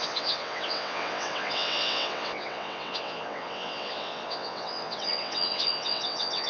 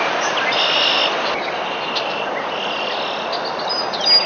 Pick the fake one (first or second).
first